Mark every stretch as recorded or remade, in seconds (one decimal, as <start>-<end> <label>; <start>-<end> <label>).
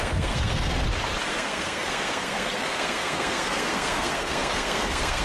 0.0-0.8 remade; 0.8-1.3 recorded; 1.3-5.2 remade